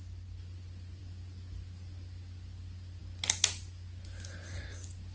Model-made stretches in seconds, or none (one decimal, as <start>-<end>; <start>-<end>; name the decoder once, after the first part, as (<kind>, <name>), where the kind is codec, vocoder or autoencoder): none